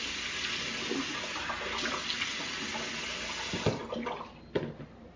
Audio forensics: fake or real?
real